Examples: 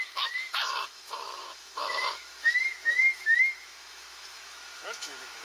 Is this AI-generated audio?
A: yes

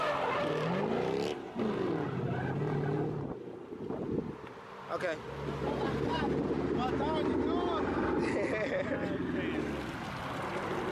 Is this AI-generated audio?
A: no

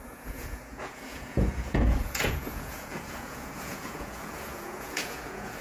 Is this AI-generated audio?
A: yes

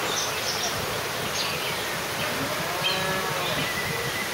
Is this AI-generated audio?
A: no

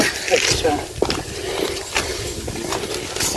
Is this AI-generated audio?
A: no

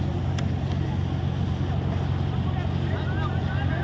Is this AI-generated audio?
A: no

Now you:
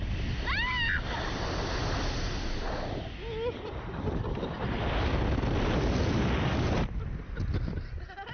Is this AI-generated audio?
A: no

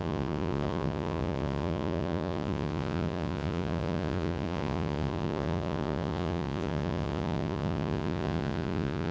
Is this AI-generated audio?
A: yes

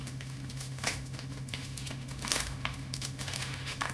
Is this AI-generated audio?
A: yes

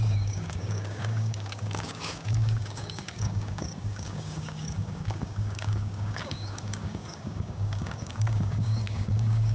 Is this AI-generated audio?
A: yes